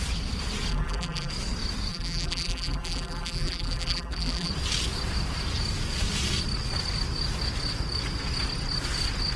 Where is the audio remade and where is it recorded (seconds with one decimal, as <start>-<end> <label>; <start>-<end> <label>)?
0.0-0.7 recorded; 0.7-1.3 remade; 1.3-1.9 recorded; 1.9-4.5 remade; 4.5-9.4 recorded